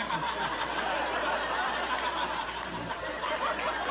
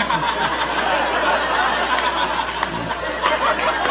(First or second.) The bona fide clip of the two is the second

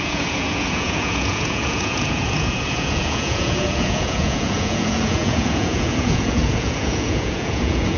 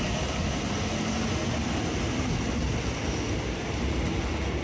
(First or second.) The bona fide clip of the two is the second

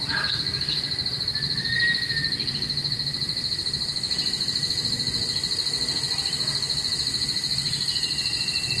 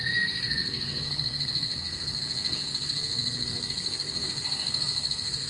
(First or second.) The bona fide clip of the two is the first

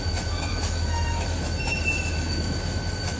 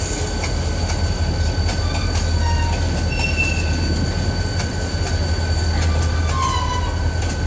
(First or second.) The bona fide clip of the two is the second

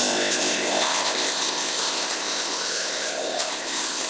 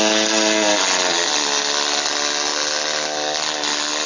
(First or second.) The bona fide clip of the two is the second